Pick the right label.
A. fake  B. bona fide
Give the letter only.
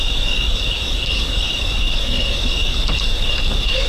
A